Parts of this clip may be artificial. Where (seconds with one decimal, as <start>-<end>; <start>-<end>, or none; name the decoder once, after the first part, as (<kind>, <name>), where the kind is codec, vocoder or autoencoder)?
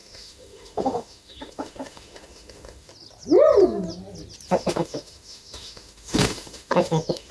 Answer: 0.0-2.9 (autoencoder, DAC-VAE); 4.5-7.3